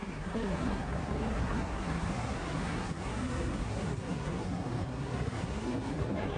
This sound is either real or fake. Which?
fake